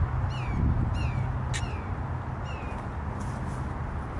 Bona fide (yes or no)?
yes